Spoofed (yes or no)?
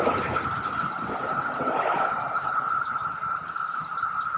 no